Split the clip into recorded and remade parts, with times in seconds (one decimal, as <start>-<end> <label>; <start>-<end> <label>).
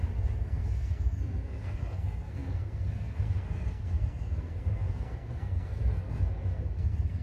0.0-7.2 remade